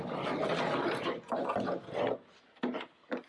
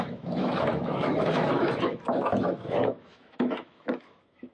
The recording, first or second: first